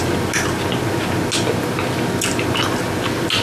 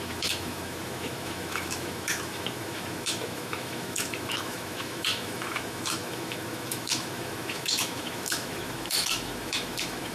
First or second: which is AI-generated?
second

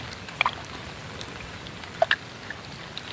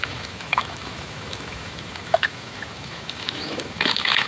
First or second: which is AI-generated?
second